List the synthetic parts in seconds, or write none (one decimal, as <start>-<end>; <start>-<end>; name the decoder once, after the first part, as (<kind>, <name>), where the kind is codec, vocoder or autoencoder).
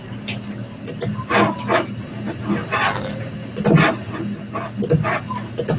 none